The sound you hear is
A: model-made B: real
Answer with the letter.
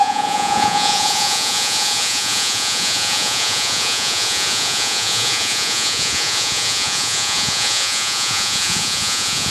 A